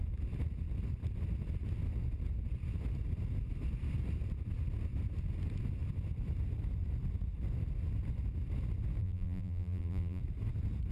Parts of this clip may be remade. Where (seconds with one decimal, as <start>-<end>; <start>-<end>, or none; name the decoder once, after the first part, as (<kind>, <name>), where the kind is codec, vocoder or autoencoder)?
9.0-10.2 (vocoder, BigVGAN v2)